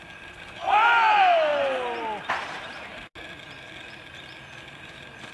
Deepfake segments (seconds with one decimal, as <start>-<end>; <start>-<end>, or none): none